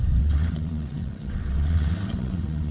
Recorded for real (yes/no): no